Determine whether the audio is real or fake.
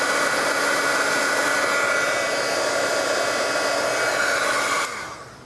real